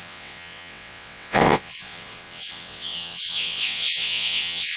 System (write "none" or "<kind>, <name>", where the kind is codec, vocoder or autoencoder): vocoder, WaveNeXt